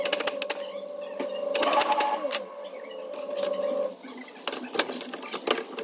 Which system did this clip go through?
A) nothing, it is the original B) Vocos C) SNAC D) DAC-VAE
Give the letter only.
A